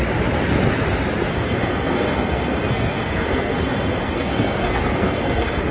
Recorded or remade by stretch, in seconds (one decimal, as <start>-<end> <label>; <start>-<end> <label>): 0.0-1.3 recorded; 1.3-5.7 remade